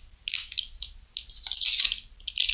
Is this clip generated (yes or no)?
no